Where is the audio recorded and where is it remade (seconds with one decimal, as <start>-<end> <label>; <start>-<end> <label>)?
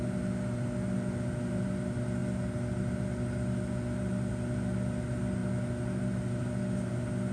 0.0-7.3 recorded